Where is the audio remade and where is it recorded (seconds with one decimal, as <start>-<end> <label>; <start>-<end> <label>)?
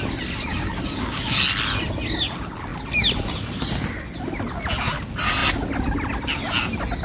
0.0-0.5 recorded; 0.5-1.4 remade; 1.4-7.0 recorded